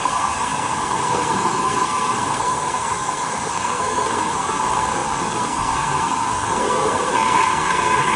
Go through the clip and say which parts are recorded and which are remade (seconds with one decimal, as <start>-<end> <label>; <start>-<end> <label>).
0.0-8.2 remade